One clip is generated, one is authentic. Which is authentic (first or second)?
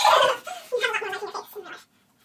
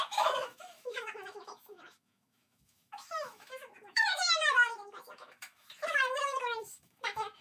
first